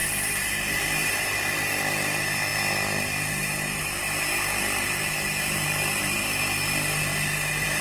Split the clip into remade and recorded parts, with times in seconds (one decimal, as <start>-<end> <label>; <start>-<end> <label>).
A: 0.0-1.1 remade; 1.1-7.8 recorded